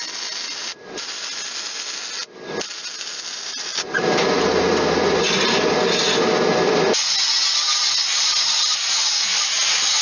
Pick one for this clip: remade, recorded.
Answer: recorded